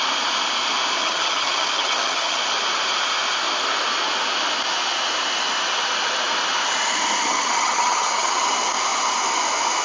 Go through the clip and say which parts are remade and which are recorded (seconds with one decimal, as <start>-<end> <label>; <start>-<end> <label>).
0.0-1.0 recorded; 1.0-2.4 remade; 2.4-7.2 recorded; 7.2-8.4 remade; 8.4-9.8 recorded